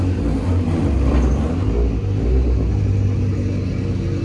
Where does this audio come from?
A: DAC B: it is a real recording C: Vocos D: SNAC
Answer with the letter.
B